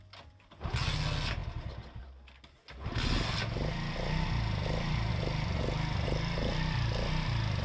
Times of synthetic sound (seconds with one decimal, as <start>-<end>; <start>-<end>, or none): none